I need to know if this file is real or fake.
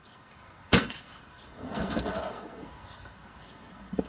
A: fake